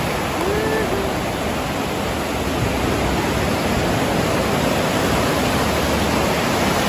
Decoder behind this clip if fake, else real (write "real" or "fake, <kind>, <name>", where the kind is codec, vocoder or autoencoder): real